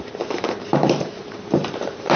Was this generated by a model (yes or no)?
yes